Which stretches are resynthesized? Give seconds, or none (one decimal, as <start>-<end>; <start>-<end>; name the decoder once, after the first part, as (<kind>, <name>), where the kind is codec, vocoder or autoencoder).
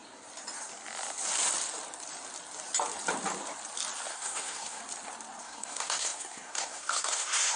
4.1-4.8 (codec, SNAC); 5.4-7.6